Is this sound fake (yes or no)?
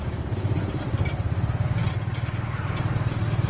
no